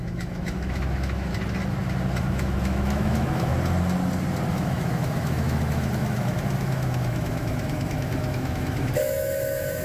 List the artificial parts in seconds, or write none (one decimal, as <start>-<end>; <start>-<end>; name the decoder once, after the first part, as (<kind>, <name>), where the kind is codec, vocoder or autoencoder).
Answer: 0.0-1.3 (autoencoder, DAC-VAE); 2.2-3.5; 4.5-9.8